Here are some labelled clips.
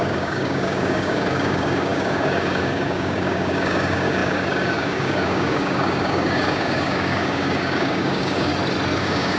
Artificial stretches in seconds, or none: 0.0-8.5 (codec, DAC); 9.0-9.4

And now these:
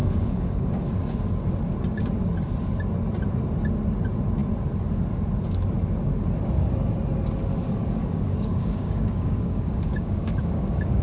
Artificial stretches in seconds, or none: 0.0-0.9 (codec, DAC); 7.8-11.0

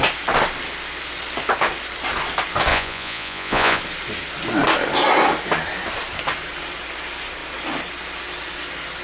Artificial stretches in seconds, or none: 2.7-3.8 (vocoder, Vocos)

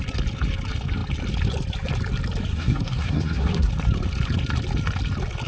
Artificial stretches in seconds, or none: 2.5-3.7 (codec, SNAC)

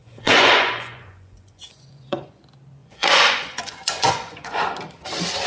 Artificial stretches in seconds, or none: 0.0-2.4 (vocoder, Vocos); 2.8-4.6

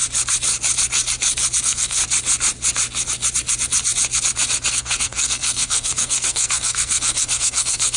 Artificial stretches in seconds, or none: 1.6-2.0 (codec, SNAC); 4.7-8.0